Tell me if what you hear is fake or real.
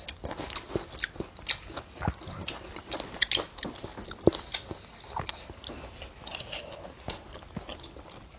real